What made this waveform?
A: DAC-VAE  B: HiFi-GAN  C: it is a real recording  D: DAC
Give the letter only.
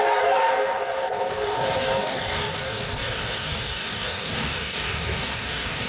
D